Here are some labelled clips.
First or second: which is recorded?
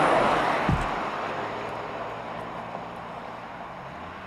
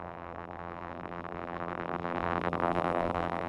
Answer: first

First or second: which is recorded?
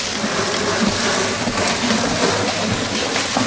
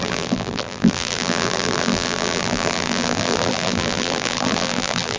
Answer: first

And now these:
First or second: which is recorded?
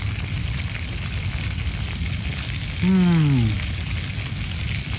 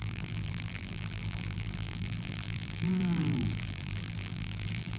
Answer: first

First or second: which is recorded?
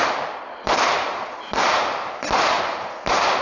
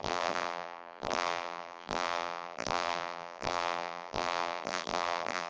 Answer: first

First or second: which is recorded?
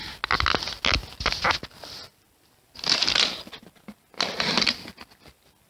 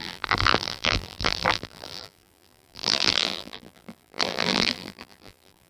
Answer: first